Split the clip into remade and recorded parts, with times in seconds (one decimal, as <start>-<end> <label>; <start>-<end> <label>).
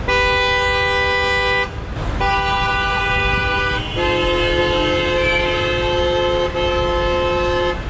0.0-7.9 recorded